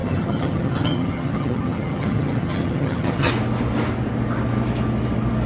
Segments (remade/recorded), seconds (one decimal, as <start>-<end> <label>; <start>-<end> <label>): 0.0-3.3 remade; 3.3-5.5 recorded